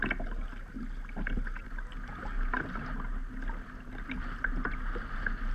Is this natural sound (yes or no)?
yes